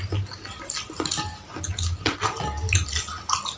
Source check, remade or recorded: recorded